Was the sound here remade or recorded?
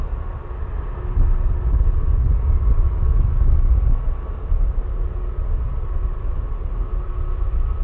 recorded